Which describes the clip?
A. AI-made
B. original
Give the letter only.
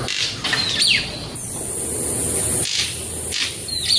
B